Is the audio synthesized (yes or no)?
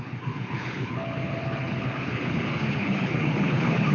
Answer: yes